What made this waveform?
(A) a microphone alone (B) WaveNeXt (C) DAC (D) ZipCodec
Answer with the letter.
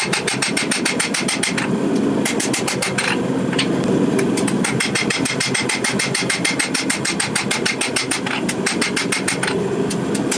A